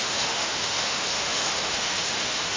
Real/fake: fake